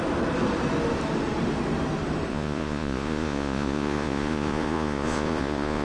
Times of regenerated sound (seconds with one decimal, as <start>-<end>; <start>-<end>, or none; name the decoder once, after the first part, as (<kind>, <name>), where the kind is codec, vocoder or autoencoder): 2.3-5.8 (vocoder, Vocos)